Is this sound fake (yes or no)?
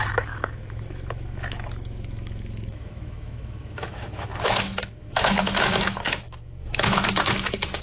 yes